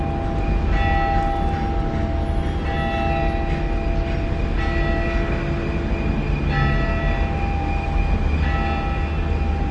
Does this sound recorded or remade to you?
recorded